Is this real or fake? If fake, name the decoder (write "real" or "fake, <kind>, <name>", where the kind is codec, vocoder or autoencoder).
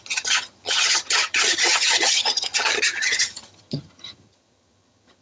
fake, vocoder, HiFi-GAN